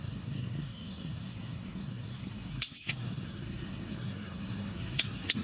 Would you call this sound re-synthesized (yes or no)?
yes